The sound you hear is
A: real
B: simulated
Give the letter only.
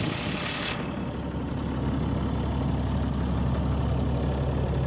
A